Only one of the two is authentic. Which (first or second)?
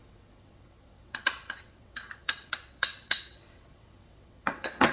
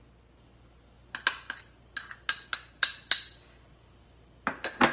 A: second